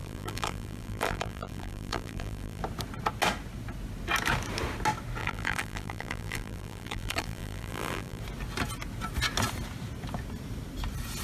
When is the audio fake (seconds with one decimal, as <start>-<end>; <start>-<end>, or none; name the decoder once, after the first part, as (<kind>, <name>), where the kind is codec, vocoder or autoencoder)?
0.0-2.6 (vocoder, BigVGAN v2); 5.2-8.2